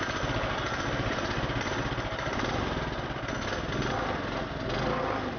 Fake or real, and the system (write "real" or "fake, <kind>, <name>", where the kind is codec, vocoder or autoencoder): real